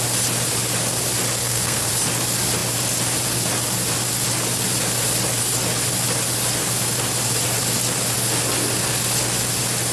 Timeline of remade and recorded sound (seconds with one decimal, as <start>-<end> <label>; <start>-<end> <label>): 0.0-1.4 recorded; 1.4-1.9 remade; 1.9-9.9 recorded